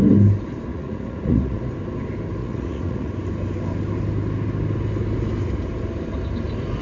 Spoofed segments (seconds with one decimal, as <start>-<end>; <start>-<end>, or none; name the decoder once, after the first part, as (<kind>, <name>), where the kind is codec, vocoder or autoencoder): 0.7-1.6 (vocoder, Vocos); 2.4-3.1